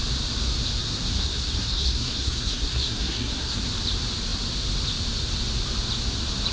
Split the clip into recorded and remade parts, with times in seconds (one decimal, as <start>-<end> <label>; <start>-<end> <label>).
0.0-0.8 recorded; 0.8-3.7 remade; 3.7-6.5 recorded